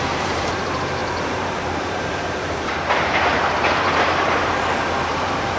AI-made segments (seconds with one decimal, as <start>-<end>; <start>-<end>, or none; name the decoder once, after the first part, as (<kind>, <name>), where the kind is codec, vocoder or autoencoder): 0.0-5.6 (vocoder, BigVGAN v2)